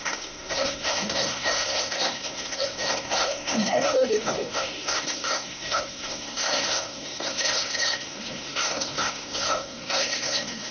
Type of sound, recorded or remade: remade